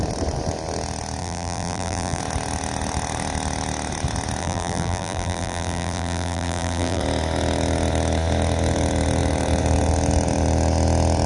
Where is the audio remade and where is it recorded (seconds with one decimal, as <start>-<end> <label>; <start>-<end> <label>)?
0.0-1.2 recorded; 1.2-2.2 remade; 2.2-4.4 recorded; 4.4-7.0 remade; 7.0-11.3 recorded